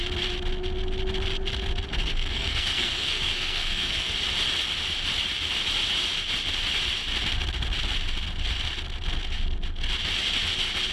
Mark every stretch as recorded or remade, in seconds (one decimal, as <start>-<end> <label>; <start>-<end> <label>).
0.0-1.9 recorded; 1.9-4.1 remade; 4.1-10.9 recorded